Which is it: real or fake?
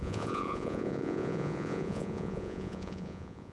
fake